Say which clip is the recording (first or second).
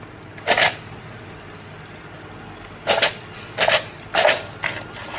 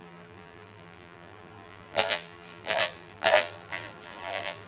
first